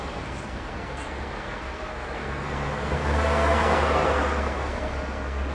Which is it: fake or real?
fake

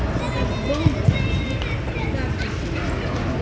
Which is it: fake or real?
real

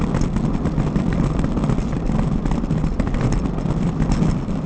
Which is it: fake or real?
real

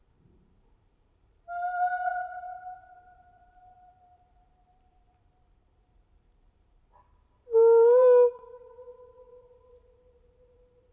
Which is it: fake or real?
fake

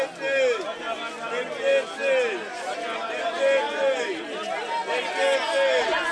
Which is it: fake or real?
real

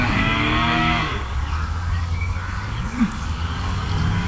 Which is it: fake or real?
fake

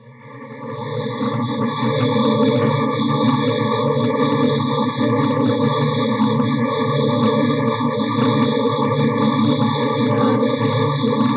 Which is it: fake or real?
real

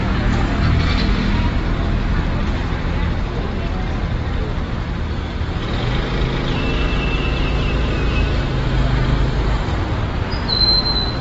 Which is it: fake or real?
real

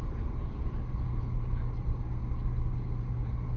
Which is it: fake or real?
real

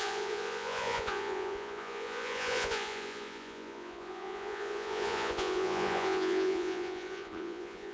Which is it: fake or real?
fake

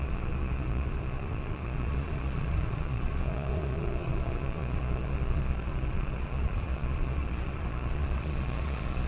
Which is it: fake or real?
fake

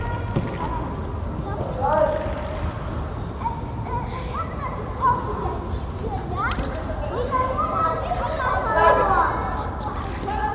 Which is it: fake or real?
real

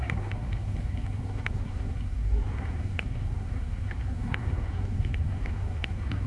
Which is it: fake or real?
fake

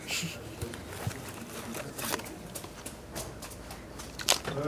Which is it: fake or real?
real